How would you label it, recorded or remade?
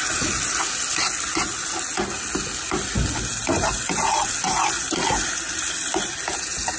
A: recorded